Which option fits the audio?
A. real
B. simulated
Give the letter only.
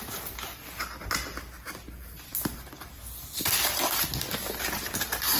A